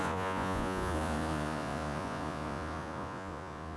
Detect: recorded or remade remade